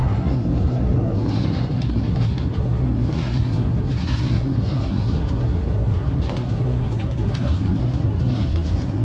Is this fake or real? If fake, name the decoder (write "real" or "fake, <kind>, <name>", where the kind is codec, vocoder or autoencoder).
fake, codec, SNAC